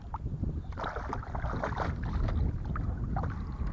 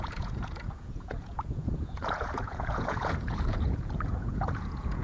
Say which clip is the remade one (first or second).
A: second